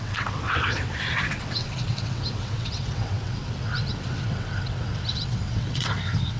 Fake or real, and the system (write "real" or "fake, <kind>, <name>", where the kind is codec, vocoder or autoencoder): fake, vocoder, WaveNeXt